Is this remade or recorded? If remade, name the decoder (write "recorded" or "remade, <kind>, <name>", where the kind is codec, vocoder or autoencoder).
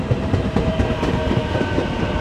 remade, vocoder, BigVGAN v2